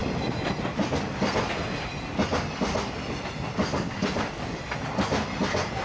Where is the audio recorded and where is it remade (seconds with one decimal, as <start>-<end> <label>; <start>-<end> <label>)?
0.0-3.7 recorded; 3.7-4.6 remade; 4.6-5.8 recorded